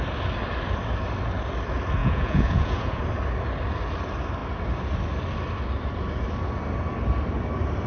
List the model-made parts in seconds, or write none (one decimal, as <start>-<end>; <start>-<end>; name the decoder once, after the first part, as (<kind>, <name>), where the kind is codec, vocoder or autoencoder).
2.0-3.0 (vocoder, Vocos)